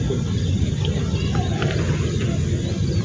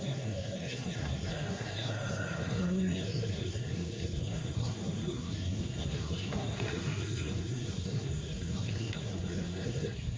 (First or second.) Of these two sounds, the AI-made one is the second